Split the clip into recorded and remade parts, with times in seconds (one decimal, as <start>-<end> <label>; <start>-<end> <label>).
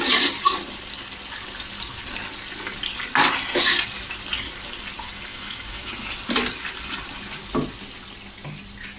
0.0-5.3 recorded; 5.3-5.9 remade; 5.9-9.0 recorded